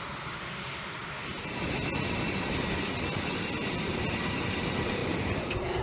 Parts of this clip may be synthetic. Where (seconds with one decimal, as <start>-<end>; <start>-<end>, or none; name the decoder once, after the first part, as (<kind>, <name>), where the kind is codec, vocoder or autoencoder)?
0.0-1.0 (vocoder, BigVGAN v2); 3.9-5.0